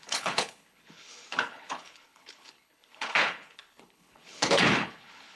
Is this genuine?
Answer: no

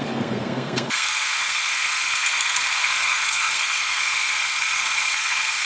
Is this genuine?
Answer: no